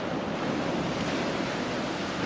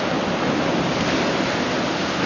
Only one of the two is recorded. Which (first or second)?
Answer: second